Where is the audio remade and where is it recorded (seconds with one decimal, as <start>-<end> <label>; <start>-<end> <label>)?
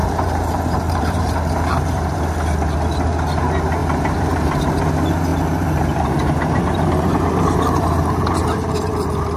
0.0-2.2 remade; 2.2-3.8 recorded; 3.8-4.8 remade; 4.8-5.3 recorded; 5.3-8.9 remade; 8.9-9.4 recorded